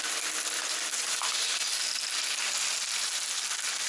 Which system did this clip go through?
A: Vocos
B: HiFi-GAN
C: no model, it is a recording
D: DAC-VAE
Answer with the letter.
C